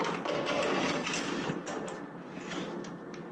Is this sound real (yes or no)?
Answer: yes